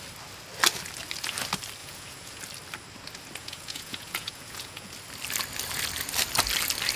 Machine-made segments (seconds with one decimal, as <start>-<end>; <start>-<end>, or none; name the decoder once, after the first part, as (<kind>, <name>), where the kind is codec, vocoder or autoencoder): 1.8-2.4 (vocoder, Vocos); 3.4-4.9